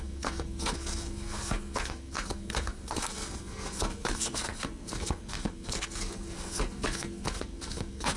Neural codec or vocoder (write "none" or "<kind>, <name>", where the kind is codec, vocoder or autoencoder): codec, SNAC